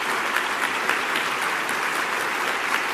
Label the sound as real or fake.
real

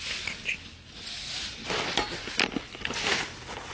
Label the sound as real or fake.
real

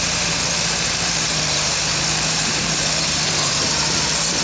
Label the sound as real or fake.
fake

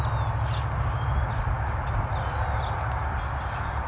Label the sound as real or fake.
real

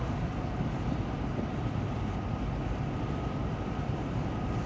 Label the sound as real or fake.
real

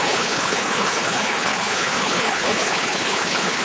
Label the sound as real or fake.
fake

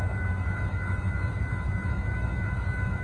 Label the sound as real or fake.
fake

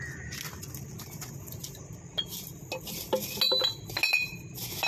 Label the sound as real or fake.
real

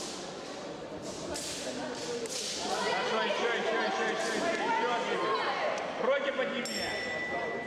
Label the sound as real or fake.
real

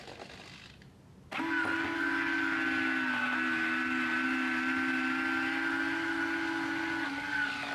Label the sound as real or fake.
real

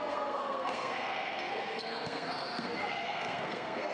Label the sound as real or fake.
fake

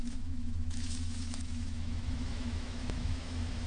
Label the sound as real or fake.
fake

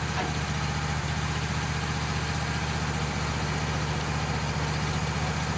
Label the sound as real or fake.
real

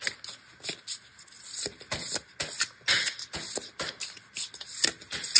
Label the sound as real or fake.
real